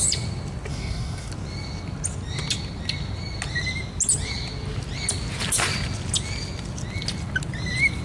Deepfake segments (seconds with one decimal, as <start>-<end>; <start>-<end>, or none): 0.7-1.3